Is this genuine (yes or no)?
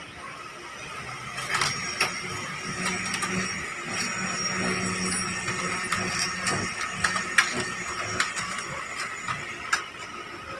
yes